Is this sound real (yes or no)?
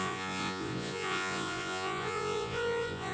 no